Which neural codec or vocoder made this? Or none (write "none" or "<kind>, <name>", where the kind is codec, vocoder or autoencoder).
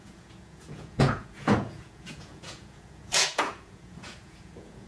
vocoder, Vocos